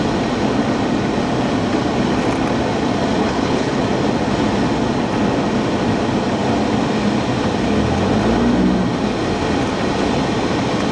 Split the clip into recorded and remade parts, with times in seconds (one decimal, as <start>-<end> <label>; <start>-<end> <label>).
0.0-3.2 recorded; 3.2-3.8 remade; 3.8-10.9 recorded